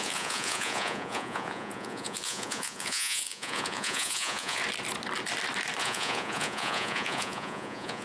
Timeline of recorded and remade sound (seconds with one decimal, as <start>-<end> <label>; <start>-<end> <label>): 0.0-4.6 remade; 4.6-5.8 recorded; 5.8-8.0 remade